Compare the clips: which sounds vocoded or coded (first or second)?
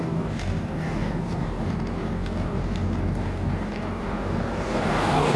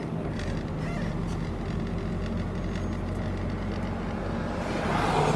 first